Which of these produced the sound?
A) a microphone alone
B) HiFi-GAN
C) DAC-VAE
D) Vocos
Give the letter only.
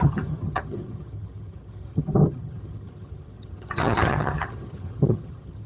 B